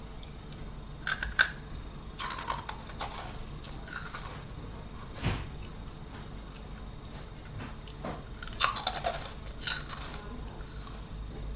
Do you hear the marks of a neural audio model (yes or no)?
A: no